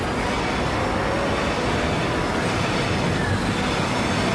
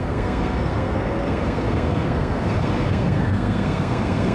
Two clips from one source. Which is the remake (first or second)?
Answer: second